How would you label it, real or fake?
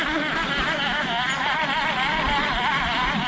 real